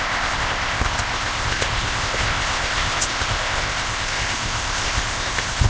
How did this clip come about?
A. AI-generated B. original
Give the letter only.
A